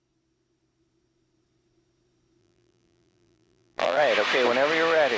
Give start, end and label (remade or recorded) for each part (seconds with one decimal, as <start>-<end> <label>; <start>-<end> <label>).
0.0-2.4 recorded; 2.4-4.0 remade; 4.0-5.2 recorded